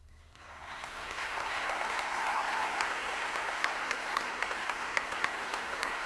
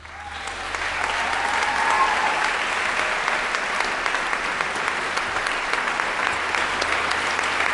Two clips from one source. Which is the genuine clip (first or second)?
second